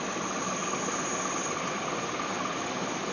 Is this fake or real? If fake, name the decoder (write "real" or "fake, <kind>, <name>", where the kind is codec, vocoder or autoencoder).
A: real